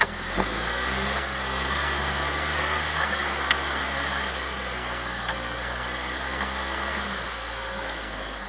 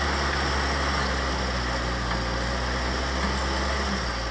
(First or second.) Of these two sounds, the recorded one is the second